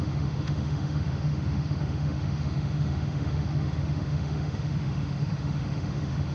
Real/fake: fake